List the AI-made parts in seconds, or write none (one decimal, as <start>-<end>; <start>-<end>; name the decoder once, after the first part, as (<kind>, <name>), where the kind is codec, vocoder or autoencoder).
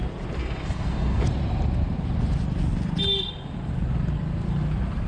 0.4-1.2 (codec, SNAC)